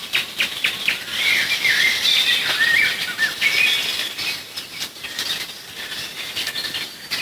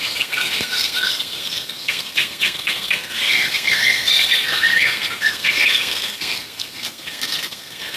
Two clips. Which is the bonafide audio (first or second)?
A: first